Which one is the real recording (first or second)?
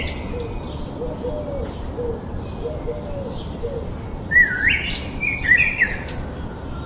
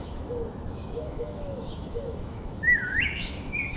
first